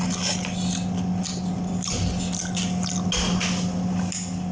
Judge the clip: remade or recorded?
recorded